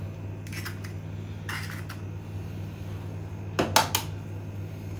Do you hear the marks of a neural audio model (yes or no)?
no